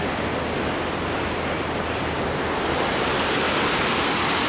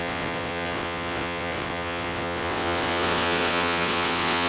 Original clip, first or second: first